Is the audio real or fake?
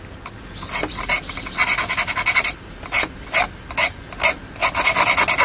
real